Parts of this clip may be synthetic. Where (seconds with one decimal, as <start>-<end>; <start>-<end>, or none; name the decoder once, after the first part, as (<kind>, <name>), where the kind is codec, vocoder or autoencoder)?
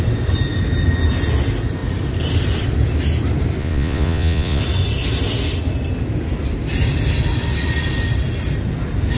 3.6-4.6 (vocoder, Vocos)